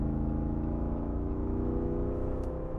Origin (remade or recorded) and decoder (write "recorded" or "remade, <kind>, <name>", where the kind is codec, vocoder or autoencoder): remade, autoencoder, DAC-VAE